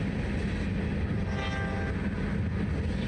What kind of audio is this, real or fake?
real